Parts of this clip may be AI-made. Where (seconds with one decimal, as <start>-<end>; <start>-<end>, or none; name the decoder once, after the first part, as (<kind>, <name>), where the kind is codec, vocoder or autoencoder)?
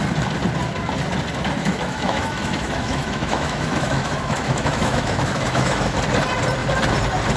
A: 1.6-6.0 (autoencoder, DAC-VAE)